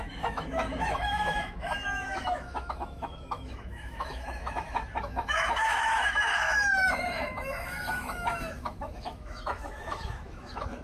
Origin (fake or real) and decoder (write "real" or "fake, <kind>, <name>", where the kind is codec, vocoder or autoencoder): fake, autoencoder, DAC-VAE